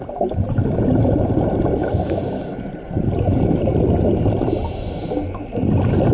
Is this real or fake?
real